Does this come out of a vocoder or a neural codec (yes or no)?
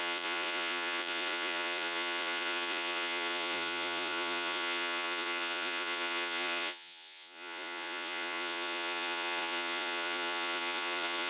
yes